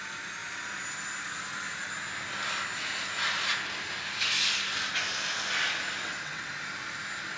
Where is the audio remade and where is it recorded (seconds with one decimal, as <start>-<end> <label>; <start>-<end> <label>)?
0.0-6.0 recorded; 6.0-6.5 remade; 6.5-7.4 recorded